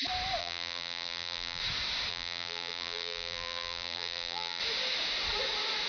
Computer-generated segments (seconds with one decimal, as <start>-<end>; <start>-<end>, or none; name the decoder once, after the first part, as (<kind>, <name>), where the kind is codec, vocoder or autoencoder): 0.4-1.6 (vocoder, BigVGAN v2); 2.1-4.6